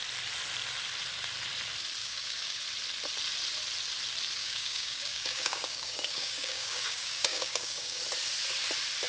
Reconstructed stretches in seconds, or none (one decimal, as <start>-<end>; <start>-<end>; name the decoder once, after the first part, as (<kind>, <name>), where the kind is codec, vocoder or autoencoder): 2.0-2.6 (codec, DAC); 4.4-8.0